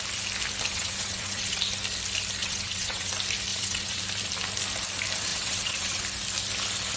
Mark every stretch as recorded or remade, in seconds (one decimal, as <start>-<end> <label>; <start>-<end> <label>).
0.0-0.7 recorded; 0.7-1.6 remade; 1.6-2.4 recorded; 2.4-3.1 remade; 3.1-3.5 recorded; 3.5-4.0 remade; 4.0-5.3 recorded; 5.3-6.0 remade; 6.0-7.0 recorded